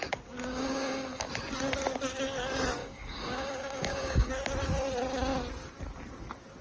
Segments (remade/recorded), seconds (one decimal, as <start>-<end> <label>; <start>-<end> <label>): 0.0-0.5 recorded; 0.5-1.3 remade; 1.3-2.8 recorded; 2.8-4.3 remade; 4.3-6.6 recorded